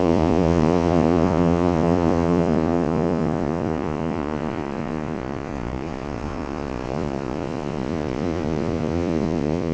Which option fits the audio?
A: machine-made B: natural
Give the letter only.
A